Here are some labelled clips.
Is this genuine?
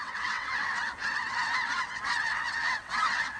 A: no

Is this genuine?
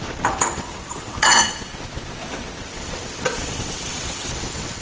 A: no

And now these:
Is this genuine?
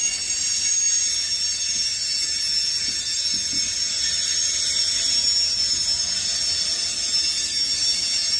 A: yes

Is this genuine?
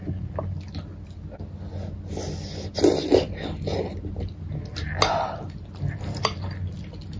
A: yes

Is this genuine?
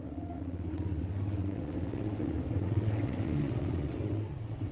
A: no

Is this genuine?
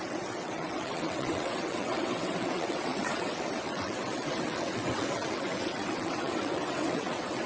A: no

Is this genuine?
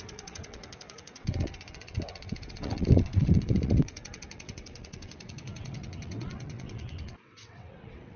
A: no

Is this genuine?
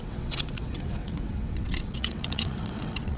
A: no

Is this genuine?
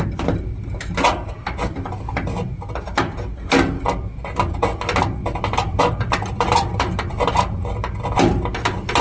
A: yes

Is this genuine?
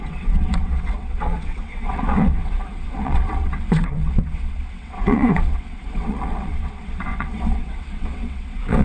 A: no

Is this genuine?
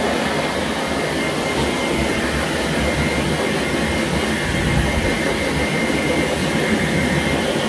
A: yes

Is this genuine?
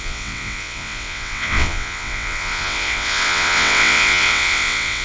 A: no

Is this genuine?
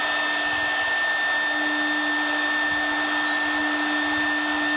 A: yes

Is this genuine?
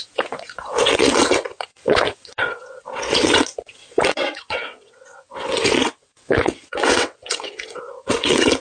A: no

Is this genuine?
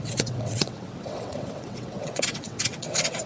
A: no